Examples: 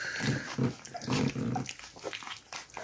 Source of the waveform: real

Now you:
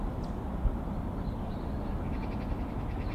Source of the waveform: real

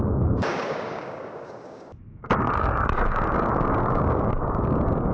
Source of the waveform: fake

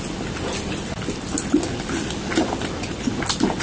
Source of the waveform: real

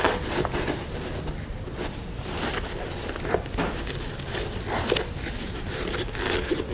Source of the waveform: real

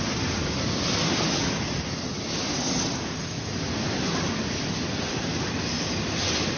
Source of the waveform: real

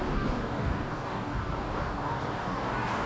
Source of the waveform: fake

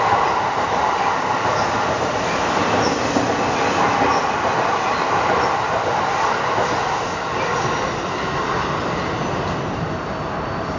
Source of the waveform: real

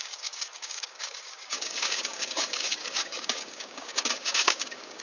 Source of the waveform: fake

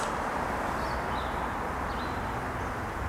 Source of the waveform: real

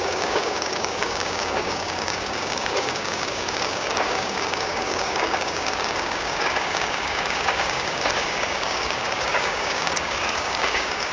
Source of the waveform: fake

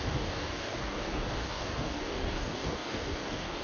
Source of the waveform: fake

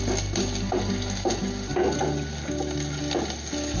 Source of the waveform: real